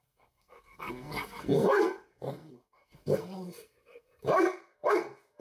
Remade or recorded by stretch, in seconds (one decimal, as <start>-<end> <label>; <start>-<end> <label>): 0.0-5.4 remade